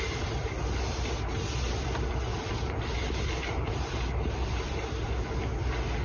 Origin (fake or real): real